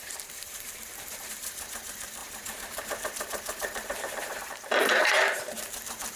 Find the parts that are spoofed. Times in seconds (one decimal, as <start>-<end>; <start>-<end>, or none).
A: 0.0-6.2